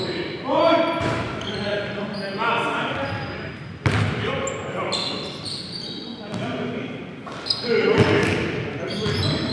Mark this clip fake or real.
real